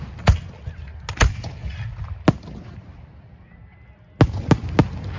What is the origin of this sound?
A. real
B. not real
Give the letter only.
A